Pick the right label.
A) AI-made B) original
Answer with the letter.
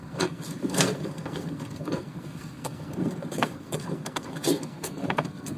A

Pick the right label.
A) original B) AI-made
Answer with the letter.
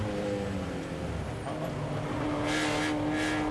A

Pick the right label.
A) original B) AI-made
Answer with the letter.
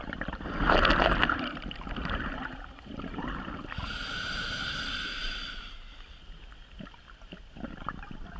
A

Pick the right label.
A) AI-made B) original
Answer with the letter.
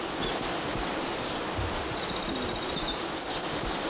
A